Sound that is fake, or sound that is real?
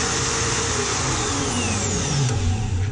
fake